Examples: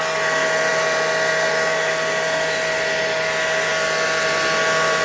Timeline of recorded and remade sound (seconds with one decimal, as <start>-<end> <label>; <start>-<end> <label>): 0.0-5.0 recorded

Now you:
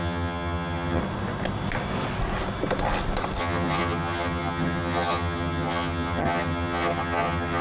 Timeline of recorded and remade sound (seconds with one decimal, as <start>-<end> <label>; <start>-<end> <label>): 0.0-1.0 remade; 1.0-3.4 recorded; 3.4-7.6 remade

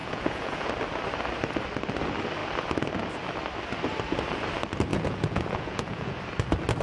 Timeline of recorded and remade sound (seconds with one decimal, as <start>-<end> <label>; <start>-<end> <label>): 0.0-0.7 remade; 0.7-4.9 recorded; 4.9-6.2 remade; 6.2-6.8 recorded